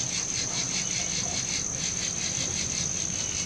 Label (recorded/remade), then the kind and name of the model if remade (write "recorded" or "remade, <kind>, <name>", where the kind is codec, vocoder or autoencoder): recorded